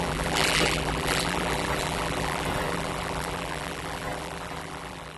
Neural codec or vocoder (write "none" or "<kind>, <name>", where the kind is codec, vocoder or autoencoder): vocoder, BigVGAN v2